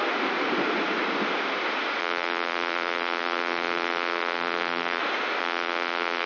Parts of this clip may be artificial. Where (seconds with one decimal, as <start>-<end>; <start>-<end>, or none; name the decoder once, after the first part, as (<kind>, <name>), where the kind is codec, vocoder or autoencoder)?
2.0-5.0 (vocoder, BigVGAN v2); 5.4-6.3